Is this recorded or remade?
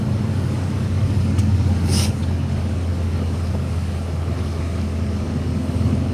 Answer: remade